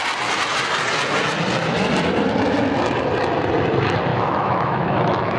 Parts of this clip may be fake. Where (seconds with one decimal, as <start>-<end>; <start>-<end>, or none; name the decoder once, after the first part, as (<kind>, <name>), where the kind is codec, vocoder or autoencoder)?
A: 4.1-5.4 (autoencoder, DAC-VAE)